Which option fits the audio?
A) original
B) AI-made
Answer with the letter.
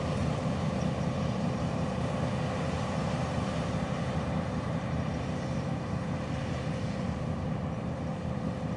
B